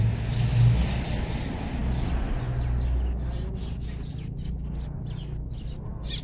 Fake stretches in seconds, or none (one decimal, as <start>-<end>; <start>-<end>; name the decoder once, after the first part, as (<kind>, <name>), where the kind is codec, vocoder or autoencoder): none